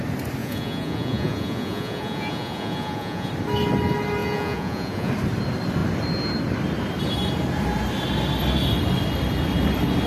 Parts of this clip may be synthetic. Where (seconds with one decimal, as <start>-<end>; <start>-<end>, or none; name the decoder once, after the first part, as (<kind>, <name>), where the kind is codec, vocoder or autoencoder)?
0.4-3.3 (vocoder, Vocos); 4.2-5.1